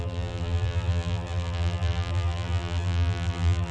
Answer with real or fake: fake